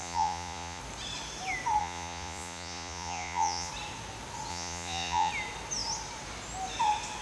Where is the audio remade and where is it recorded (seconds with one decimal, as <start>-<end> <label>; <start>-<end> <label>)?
0.0-0.8 remade; 0.8-1.8 recorded; 1.8-3.7 remade; 3.7-4.5 recorded; 4.5-5.3 remade; 5.3-7.2 recorded

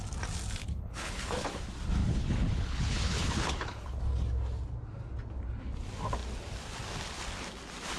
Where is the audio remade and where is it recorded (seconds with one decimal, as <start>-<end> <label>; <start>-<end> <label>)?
0.0-0.6 recorded; 0.6-1.6 remade; 1.6-2.0 recorded; 2.0-4.0 remade; 4.0-8.0 recorded